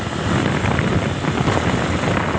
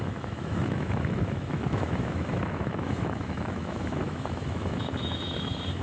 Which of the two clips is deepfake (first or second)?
second